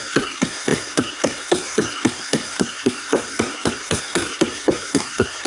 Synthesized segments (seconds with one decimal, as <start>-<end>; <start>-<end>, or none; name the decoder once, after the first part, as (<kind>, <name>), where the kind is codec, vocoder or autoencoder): 0.0-5.5 (codec, SNAC)

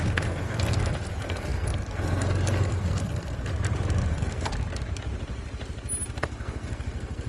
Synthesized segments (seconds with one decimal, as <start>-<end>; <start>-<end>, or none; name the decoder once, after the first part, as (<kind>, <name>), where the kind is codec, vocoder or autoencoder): 0.0-3.5 (codec, SNAC); 4.1-4.5; 6.2-7.3

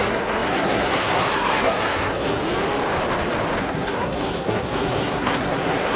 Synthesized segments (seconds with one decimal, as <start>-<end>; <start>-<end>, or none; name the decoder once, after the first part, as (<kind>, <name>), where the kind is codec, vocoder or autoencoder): 0.0-2.4 (codec, SNAC); 3.6-6.0